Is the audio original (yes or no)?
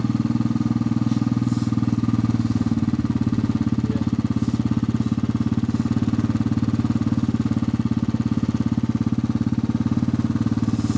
yes